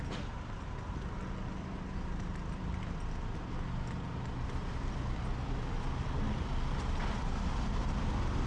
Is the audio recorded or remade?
recorded